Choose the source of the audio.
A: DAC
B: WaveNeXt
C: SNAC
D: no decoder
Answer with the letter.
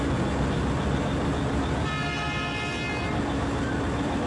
D